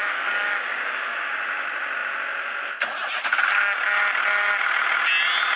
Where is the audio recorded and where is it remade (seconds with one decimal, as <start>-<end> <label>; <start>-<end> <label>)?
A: 0.0-1.3 remade; 1.3-5.6 recorded